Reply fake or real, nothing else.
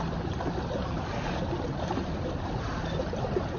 real